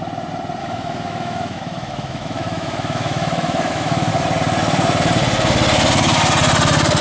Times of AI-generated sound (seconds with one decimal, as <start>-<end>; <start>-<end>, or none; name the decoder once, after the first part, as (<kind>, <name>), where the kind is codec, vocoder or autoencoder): 0.6-4.1 (autoencoder, DAC-VAE)